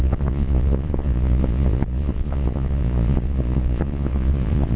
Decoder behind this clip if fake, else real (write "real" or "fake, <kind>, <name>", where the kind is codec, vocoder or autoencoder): fake, vocoder, Vocos